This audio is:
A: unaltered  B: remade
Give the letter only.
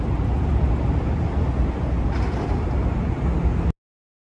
A